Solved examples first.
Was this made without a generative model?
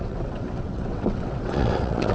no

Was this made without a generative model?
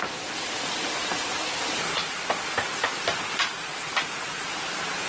yes